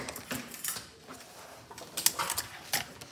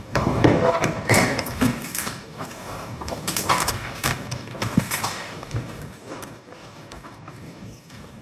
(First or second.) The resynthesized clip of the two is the second